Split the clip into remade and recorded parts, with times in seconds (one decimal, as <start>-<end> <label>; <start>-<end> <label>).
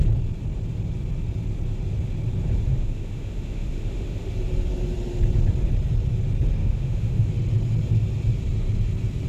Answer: 0.0-2.7 recorded; 2.7-4.3 remade; 4.3-6.6 recorded; 6.6-7.3 remade; 7.3-9.3 recorded